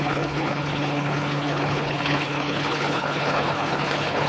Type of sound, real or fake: fake